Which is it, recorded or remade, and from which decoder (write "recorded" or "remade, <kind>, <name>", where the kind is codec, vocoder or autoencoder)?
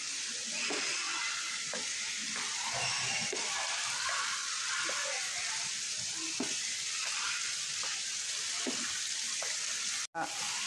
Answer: recorded